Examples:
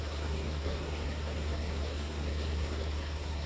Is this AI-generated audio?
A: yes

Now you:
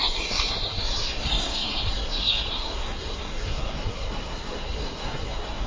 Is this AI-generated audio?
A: yes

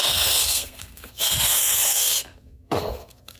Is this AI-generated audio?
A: yes